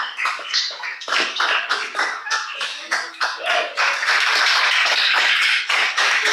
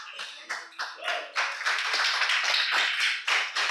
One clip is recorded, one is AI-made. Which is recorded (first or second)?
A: second